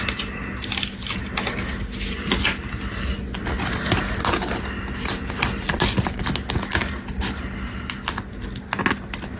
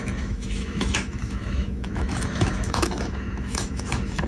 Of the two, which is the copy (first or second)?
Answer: second